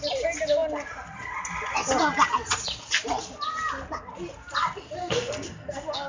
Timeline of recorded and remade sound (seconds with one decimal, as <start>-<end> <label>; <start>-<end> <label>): 0.0-5.0 recorded; 5.0-6.1 remade